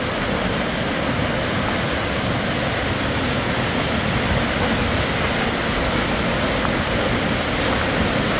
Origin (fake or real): real